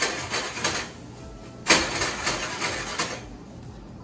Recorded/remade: recorded